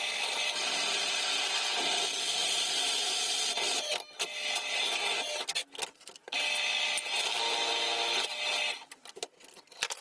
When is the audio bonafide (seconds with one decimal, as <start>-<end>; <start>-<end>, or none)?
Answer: 0.0-10.0

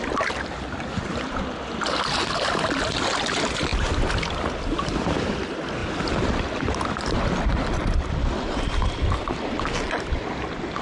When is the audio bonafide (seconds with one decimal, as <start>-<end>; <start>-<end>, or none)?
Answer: 0.0-10.8

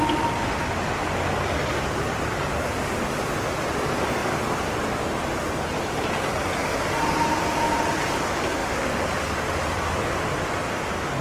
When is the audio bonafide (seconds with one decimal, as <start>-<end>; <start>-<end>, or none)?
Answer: 0.0-11.2

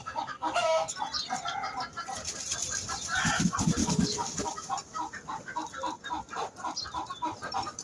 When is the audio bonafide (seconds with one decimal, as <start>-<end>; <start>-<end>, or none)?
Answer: 1.0-3.8; 4.4-7.8

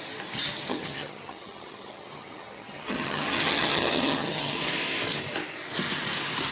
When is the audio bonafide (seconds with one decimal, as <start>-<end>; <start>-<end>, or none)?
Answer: 0.0-0.7; 4.6-6.5